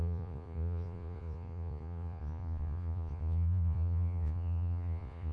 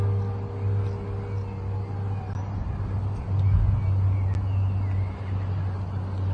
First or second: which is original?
second